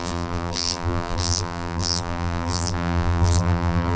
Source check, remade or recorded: remade